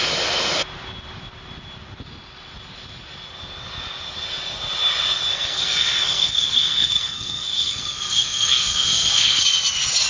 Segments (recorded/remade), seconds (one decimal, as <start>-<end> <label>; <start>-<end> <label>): 0.0-5.3 recorded; 5.3-9.4 remade; 9.4-10.1 recorded